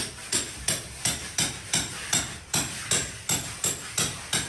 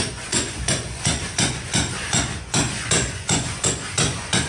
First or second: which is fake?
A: second